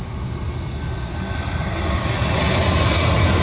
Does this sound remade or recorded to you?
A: recorded